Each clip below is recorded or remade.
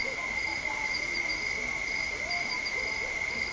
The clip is recorded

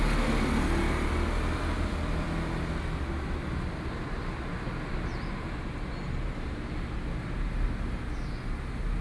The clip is recorded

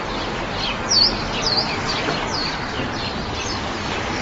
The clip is recorded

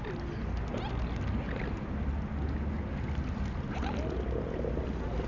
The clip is recorded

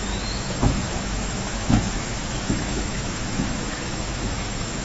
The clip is remade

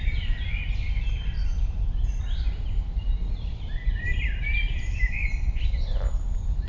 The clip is remade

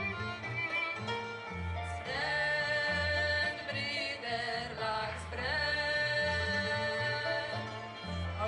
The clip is recorded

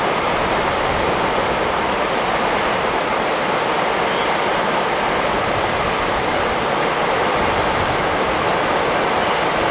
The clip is recorded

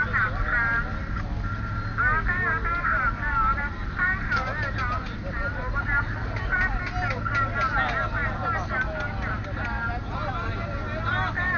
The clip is recorded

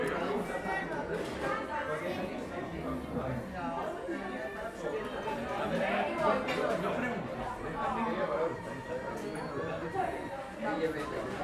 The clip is recorded